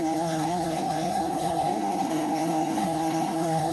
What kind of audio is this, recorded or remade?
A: remade